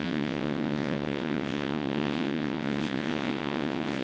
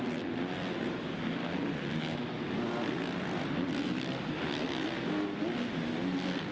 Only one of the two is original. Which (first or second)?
second